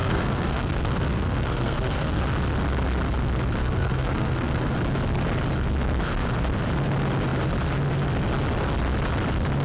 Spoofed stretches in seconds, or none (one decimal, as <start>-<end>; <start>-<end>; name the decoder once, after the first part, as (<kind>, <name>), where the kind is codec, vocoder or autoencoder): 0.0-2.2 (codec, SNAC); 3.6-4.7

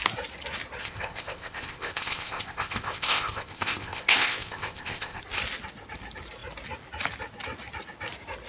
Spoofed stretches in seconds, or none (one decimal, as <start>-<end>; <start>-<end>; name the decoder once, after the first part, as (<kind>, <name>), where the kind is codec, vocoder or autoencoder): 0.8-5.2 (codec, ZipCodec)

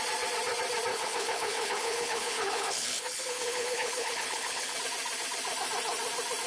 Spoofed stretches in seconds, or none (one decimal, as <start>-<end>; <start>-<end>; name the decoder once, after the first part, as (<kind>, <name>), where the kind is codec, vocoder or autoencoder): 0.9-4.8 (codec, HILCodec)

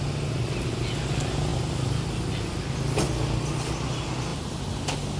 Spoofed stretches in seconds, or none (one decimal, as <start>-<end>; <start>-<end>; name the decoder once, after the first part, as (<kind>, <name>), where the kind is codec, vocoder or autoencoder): 4.3-5.2 (vocoder, BigVGAN v2)